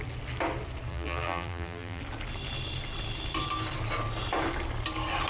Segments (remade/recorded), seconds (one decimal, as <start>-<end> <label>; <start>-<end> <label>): 0.0-0.9 recorded; 0.9-2.0 remade; 2.0-5.3 recorded